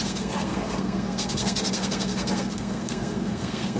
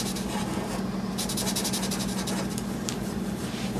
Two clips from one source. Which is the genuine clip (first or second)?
second